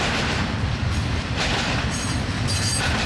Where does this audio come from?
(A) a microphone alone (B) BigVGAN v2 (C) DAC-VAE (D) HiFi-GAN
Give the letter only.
B